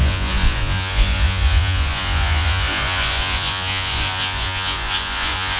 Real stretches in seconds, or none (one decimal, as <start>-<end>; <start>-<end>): none